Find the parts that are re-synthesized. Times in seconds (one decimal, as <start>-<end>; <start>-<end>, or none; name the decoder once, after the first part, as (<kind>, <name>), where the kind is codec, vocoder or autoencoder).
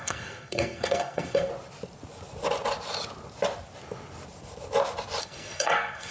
0.0-1.5 (codec, SNAC); 5.2-6.1